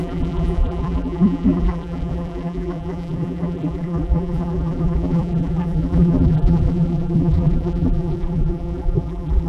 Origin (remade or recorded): remade